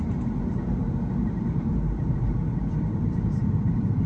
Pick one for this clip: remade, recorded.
remade